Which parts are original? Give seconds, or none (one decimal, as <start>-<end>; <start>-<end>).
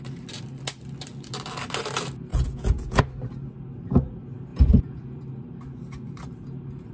0.0-2.3; 3.0-4.5; 5.2-6.9